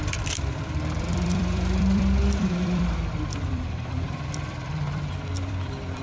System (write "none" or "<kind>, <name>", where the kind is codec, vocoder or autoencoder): vocoder, BigVGAN v2